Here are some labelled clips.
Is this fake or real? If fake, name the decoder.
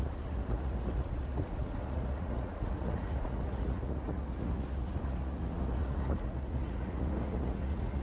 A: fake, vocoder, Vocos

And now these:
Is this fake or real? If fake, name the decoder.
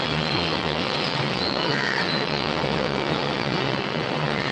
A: fake, vocoder, WaveNeXt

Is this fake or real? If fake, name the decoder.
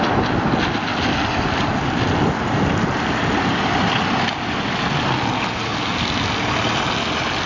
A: real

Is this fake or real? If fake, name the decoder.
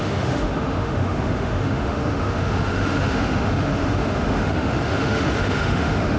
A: fake, autoencoder, DAC-VAE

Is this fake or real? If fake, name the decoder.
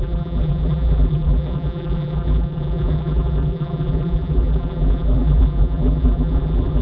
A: fake, vocoder, BigVGAN v2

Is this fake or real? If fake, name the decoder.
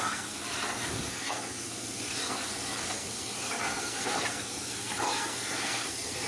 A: fake, codec, SNAC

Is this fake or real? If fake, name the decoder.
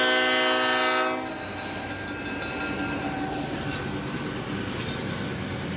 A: real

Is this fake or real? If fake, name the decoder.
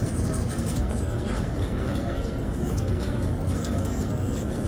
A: fake, codec, SNAC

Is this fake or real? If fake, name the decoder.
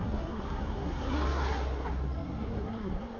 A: fake, codec, SNAC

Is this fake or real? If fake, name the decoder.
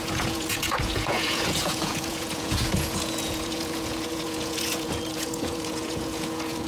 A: fake, vocoder, Vocos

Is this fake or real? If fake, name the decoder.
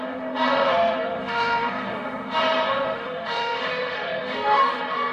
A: fake, autoencoder, DAC-VAE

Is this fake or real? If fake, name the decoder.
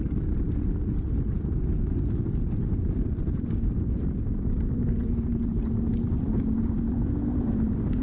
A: fake, vocoder, BigVGAN v2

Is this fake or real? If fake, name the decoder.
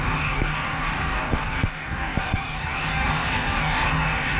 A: fake, codec, DAC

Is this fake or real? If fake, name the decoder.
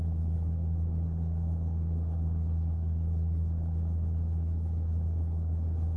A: fake, codec, HILCodec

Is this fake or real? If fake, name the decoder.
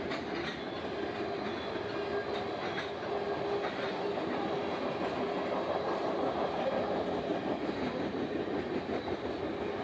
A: real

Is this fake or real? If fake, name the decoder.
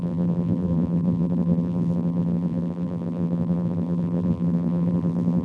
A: fake, vocoder, BigVGAN v2